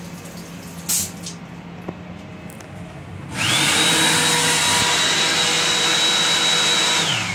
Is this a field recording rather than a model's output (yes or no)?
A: yes